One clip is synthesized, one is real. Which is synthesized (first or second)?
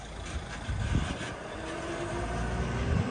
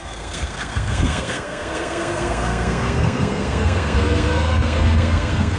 second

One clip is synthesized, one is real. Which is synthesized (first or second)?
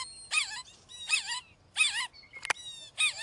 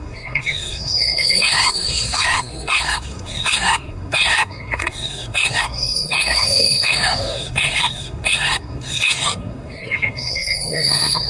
second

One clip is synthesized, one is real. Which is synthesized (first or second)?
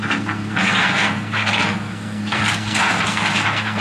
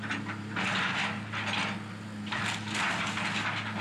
first